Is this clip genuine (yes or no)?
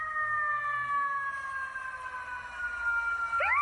yes